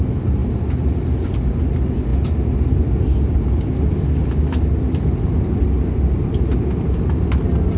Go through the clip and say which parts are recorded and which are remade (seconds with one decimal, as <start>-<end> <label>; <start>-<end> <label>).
0.0-7.8 recorded